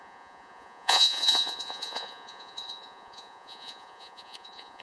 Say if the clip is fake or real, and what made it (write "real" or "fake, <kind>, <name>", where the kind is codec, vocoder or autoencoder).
fake, vocoder, Vocos